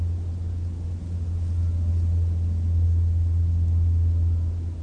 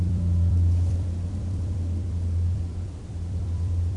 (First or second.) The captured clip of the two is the first